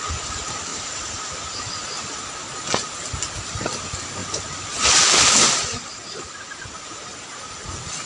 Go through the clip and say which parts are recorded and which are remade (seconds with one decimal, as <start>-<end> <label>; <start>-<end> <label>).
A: 0.0-0.7 recorded; 0.7-1.6 remade; 1.6-8.1 recorded